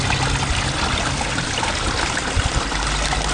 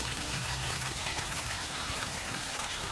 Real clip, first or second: first